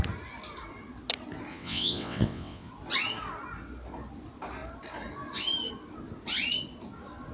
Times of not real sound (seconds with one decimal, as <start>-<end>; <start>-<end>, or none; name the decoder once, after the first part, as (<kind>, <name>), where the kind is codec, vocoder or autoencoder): 1.5-2.7 (vocoder, WaveNeXt)